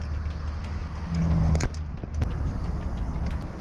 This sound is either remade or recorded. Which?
recorded